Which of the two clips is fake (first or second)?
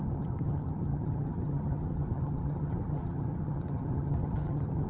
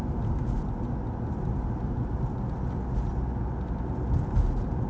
first